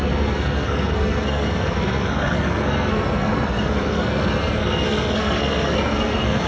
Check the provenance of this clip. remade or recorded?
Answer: remade